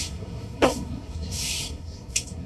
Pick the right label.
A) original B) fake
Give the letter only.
B